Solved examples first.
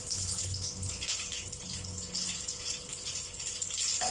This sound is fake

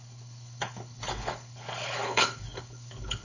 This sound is fake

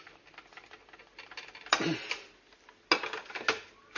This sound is real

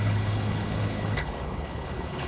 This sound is fake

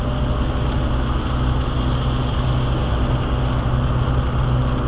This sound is real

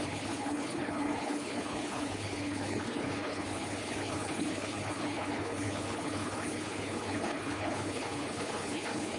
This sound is fake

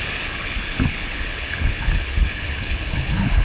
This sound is fake